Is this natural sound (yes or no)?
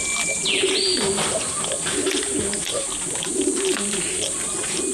yes